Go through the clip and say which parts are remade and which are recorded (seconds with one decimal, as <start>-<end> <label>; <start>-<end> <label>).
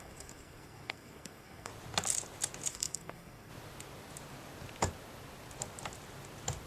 0.0-1.7 remade; 1.7-2.7 recorded; 2.7-3.5 remade; 3.5-6.7 recorded